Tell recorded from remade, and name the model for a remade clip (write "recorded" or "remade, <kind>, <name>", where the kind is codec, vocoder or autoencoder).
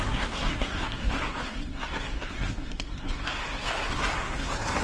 remade, codec, SNAC